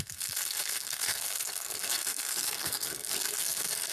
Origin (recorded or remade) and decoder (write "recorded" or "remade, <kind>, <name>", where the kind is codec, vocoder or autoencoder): remade, codec, SNAC